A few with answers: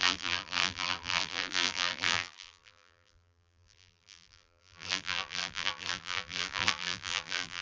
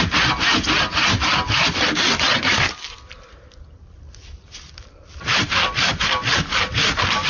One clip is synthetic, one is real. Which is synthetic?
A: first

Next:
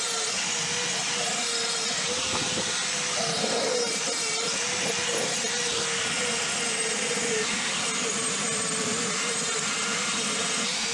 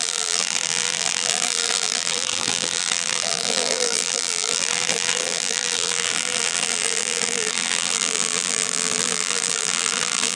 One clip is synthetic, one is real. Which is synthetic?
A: second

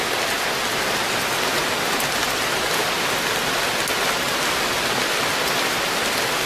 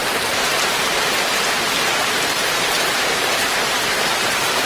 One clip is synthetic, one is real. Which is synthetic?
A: second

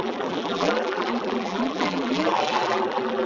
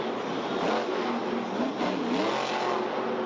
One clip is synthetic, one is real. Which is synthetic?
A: first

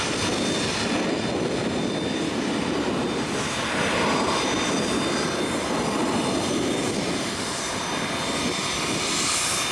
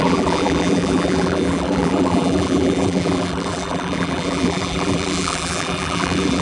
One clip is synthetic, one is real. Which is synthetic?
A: second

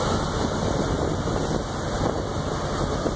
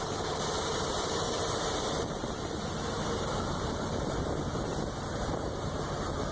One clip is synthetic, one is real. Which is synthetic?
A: second